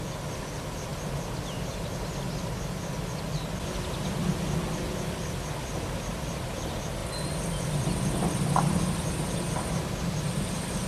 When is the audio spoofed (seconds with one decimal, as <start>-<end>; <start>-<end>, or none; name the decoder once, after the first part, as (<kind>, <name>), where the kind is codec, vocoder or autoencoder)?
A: none